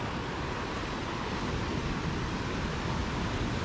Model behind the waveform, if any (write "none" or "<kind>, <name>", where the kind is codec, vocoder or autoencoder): none